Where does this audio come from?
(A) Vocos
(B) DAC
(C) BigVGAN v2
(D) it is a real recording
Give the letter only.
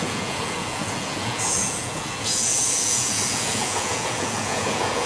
A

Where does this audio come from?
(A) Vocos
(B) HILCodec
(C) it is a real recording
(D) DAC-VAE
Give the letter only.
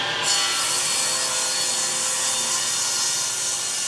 C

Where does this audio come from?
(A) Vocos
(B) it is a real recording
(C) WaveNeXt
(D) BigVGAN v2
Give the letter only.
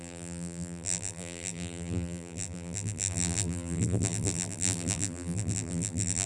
D